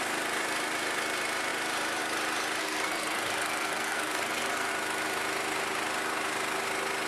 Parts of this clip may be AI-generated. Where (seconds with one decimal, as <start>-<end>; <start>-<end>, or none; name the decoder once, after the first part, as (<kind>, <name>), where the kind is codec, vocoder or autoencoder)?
2.6-4.7 (codec, SNAC)